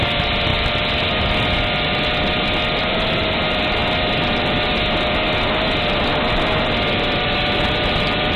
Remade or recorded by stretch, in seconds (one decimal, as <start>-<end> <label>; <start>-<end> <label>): 0.0-8.4 recorded